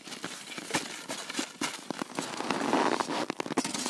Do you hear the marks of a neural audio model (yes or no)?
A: no